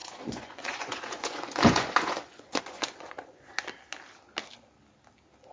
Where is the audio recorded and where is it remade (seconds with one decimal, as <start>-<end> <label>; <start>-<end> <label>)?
0.0-3.5 remade; 3.5-5.5 recorded

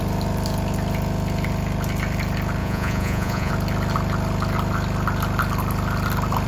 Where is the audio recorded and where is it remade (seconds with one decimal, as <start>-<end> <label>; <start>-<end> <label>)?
0.0-2.6 recorded; 2.6-3.5 remade; 3.5-6.5 recorded